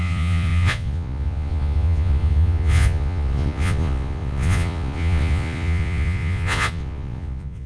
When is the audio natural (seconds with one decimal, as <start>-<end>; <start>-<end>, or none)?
none